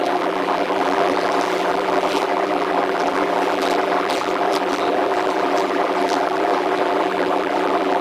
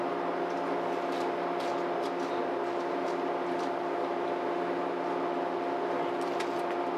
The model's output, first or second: first